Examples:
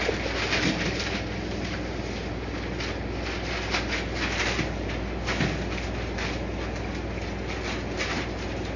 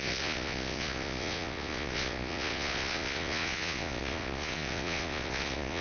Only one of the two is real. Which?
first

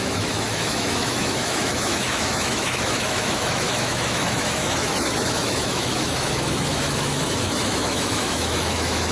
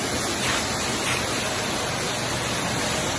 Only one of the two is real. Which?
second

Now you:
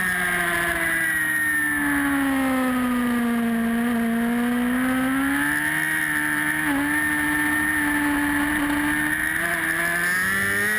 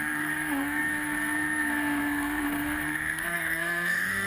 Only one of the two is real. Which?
first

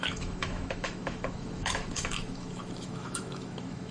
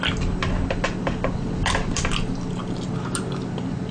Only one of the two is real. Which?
second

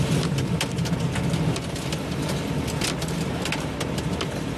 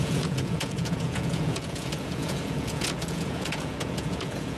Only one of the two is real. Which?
first